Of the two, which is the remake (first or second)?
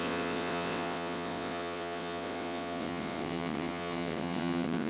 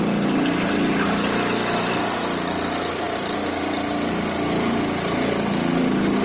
first